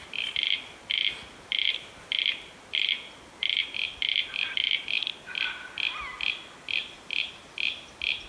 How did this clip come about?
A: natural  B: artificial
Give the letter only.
A